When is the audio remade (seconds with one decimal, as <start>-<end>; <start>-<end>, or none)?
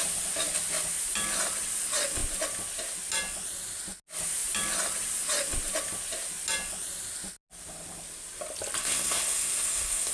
8.8-10.1